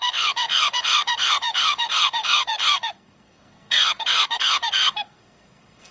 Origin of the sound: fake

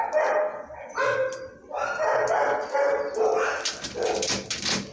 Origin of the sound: real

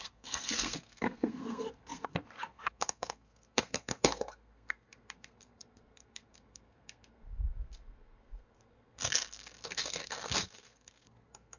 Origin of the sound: fake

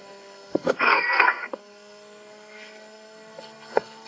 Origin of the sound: fake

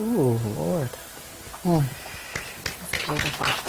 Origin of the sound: real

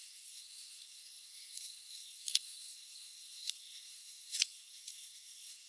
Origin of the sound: fake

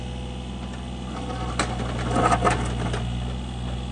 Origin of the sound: real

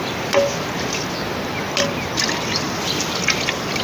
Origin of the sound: real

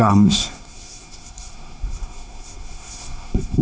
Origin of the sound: fake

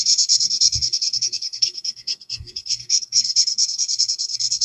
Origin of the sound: fake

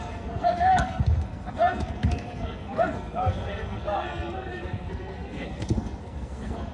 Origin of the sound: fake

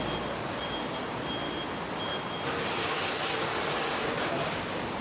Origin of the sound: real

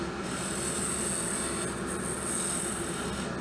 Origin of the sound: real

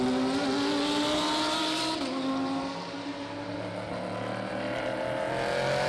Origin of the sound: real